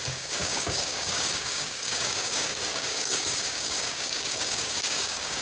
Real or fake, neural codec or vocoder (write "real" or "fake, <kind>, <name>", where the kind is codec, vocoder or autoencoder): fake, codec, DAC